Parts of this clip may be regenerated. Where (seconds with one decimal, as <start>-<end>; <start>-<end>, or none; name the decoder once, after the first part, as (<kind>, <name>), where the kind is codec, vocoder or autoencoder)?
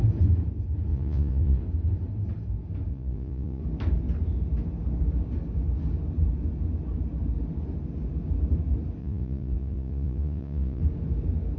0.9-1.6 (vocoder, Vocos); 2.9-3.6; 9.0-10.8